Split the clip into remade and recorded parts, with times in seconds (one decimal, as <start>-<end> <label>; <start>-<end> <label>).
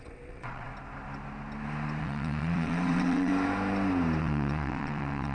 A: 0.0-0.7 remade; 0.7-2.0 recorded; 2.0-3.3 remade; 3.3-4.2 recorded; 4.2-5.3 remade